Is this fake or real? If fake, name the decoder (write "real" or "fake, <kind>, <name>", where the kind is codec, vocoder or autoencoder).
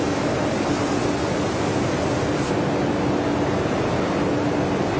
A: real